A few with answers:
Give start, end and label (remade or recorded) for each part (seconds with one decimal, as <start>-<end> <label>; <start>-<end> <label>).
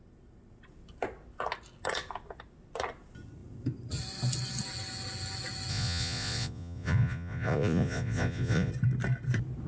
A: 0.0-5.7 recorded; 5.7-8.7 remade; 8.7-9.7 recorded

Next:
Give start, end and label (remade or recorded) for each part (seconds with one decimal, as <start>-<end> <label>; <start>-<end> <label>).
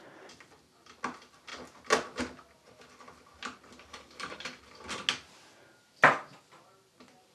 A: 0.0-3.9 recorded; 3.9-4.6 remade; 4.6-7.3 recorded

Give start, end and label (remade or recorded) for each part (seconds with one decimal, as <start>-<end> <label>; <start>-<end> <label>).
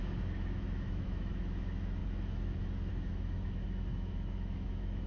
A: 0.0-5.1 remade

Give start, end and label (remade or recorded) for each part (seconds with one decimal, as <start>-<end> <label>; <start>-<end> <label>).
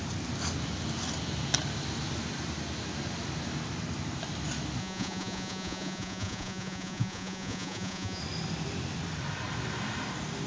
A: 0.0-4.8 recorded; 4.8-8.2 remade; 8.2-10.5 recorded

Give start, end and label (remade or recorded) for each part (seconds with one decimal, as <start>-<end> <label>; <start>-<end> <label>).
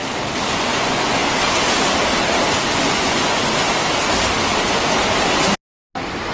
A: 0.0-0.5 recorded; 0.5-1.2 remade; 1.2-2.8 recorded; 2.8-3.4 remade; 3.4-6.3 recorded